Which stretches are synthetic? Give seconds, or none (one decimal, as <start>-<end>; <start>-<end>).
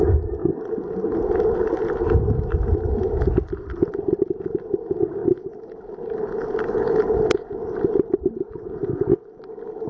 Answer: none